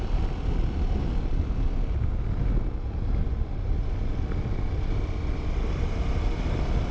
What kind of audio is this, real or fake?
real